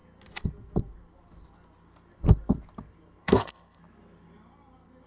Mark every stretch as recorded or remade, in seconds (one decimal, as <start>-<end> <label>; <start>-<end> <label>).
0.0-3.2 recorded; 3.2-3.8 remade; 3.8-5.1 recorded